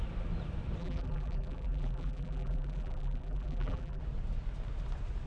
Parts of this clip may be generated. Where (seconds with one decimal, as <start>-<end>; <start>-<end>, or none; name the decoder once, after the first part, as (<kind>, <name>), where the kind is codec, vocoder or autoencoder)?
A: 0.8-4.0 (vocoder, BigVGAN v2)